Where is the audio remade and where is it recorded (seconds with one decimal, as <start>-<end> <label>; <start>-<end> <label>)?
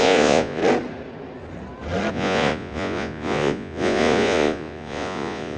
0.0-0.6 remade; 0.6-2.1 recorded; 2.1-5.6 remade